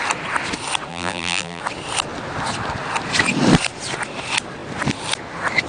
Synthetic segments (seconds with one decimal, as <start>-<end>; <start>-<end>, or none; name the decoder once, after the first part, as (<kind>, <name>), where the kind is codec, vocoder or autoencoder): 0.9-1.6 (vocoder, BigVGAN v2)